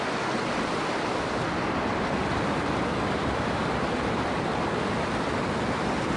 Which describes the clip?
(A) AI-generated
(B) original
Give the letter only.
B